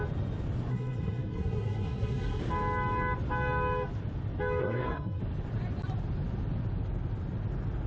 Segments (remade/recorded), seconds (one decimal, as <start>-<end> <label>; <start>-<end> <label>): 0.0-0.7 recorded; 0.7-2.4 remade; 2.4-4.6 recorded; 4.6-5.2 remade; 5.2-7.9 recorded

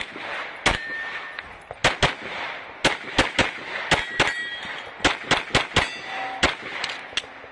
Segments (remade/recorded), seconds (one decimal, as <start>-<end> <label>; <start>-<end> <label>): 0.0-7.5 recorded

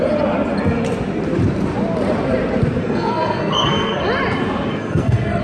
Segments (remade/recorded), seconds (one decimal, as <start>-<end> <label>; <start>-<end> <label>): 0.0-2.8 recorded; 2.8-4.0 remade; 4.0-4.7 recorded; 4.7-5.4 remade

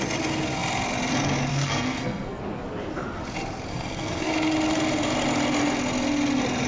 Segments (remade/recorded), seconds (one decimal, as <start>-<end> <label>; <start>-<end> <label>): 0.0-1.5 recorded; 1.5-2.4 remade; 2.4-3.7 recorded; 3.7-4.3 remade; 4.3-6.7 recorded

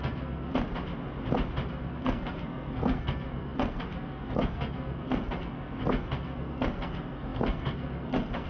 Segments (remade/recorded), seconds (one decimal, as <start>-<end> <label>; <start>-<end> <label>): 0.0-0.5 remade; 0.5-1.7 recorded; 1.7-8.5 remade